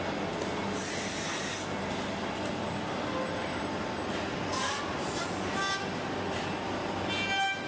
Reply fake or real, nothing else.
real